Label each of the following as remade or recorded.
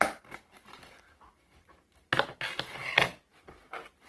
recorded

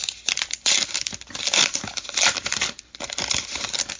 recorded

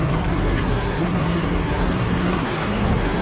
remade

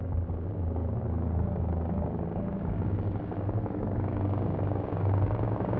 remade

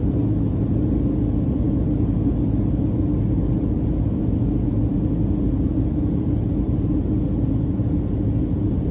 recorded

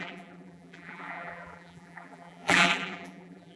remade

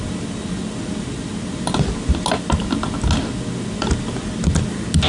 recorded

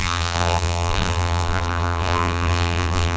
remade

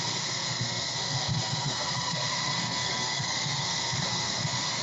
remade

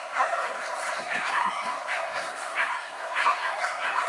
remade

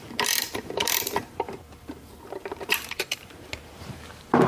remade